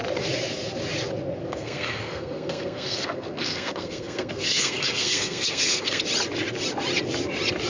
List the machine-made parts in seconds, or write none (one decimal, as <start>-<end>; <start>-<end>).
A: 1.4-6.0